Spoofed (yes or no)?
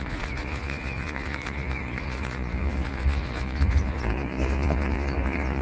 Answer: yes